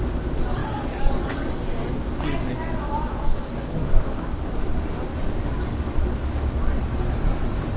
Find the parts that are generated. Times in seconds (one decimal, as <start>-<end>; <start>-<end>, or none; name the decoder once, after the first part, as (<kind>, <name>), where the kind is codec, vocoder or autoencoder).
0.6-1.6 (codec, DAC); 3.2-4.5; 5.7-6.4